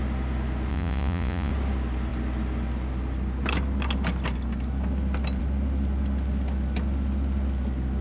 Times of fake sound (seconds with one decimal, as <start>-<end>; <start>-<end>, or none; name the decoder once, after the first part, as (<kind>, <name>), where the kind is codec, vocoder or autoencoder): 0.7-1.5 (vocoder, Vocos)